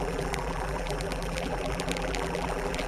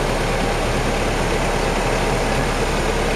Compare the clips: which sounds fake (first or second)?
first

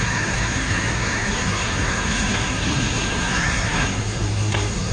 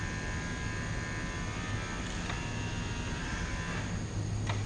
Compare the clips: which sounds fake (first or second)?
first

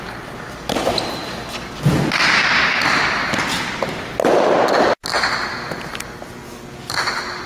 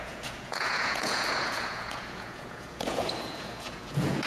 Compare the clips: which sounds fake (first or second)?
second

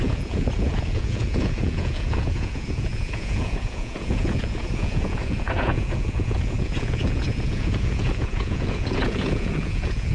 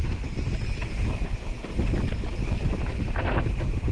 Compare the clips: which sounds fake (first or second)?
first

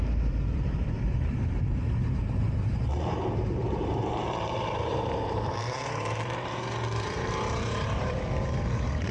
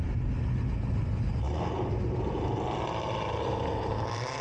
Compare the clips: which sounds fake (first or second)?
first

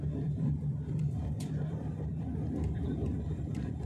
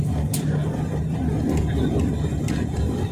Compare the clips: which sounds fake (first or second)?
first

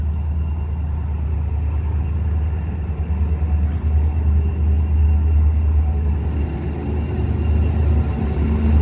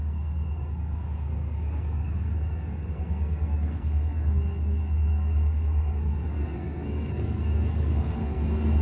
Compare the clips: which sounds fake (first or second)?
second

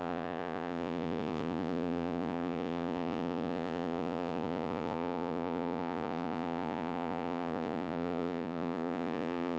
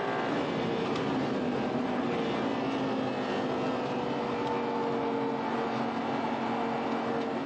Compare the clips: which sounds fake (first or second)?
first